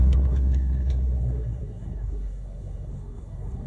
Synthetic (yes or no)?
yes